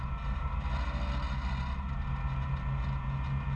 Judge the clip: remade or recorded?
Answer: recorded